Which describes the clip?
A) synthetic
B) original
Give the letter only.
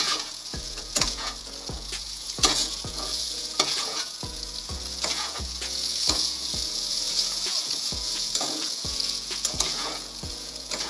A